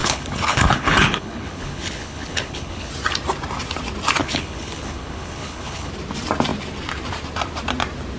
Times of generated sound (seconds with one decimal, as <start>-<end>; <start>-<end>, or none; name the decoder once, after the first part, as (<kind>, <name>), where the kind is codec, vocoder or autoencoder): 0.0-2.9 (codec, HILCodec); 4.2-5.9